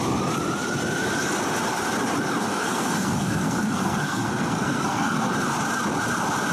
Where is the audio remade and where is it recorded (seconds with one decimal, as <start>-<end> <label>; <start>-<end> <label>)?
0.0-2.5 recorded; 2.5-5.3 remade; 5.3-6.5 recorded

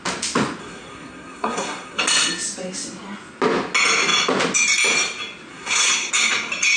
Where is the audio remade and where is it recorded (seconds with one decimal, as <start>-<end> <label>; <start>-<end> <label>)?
0.0-0.6 recorded; 0.6-2.0 remade; 2.0-5.5 recorded; 5.5-6.1 remade; 6.1-6.8 recorded

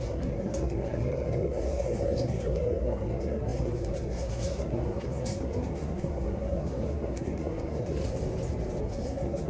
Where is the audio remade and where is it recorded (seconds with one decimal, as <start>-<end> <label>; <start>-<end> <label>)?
0.0-8.0 remade; 8.0-8.8 recorded; 8.8-9.5 remade

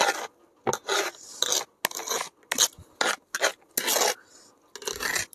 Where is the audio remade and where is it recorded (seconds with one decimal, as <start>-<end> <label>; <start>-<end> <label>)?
0.0-5.3 recorded

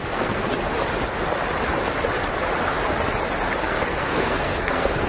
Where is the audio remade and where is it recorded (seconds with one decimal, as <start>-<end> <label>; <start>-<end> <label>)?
0.0-0.5 remade; 0.5-3.6 recorded; 3.6-5.1 remade

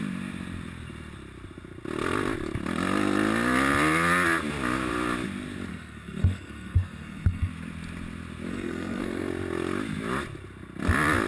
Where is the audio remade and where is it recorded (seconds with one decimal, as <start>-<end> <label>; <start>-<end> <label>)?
0.0-5.7 recorded; 5.7-7.5 remade; 7.5-8.5 recorded; 8.5-9.3 remade; 9.3-11.3 recorded

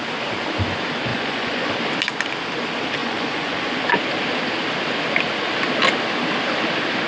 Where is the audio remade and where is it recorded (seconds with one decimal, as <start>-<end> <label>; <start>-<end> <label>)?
0.0-1.1 recorded; 1.1-1.7 remade; 1.7-3.0 recorded; 3.0-3.9 remade; 3.9-7.1 recorded